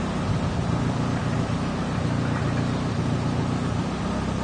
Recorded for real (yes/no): yes